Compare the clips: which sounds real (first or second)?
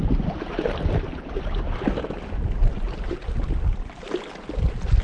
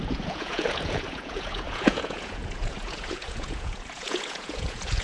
first